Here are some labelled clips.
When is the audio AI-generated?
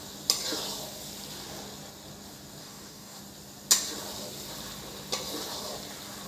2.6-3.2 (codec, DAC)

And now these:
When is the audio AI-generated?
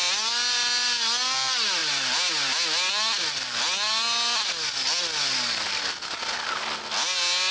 none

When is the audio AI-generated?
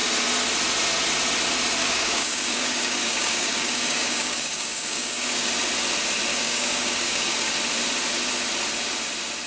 1.8-5.5 (codec, DAC); 6.3-7.5